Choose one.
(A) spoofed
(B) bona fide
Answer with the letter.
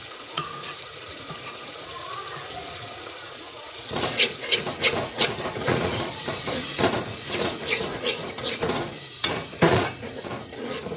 A